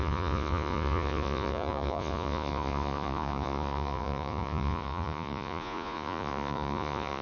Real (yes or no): no